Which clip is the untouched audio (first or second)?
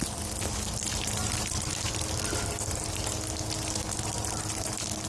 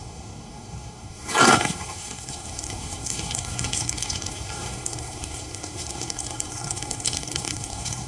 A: first